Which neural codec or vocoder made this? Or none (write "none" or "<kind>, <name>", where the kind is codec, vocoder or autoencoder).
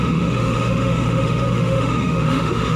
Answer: autoencoder, DAC-VAE